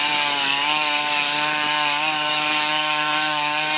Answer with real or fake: fake